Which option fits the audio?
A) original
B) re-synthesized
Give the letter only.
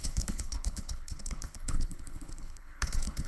B